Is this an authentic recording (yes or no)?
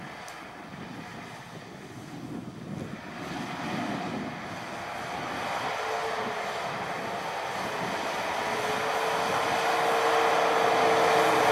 yes